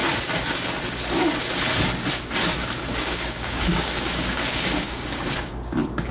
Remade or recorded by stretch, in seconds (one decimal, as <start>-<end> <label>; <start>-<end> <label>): 0.0-3.0 recorded; 3.0-6.1 remade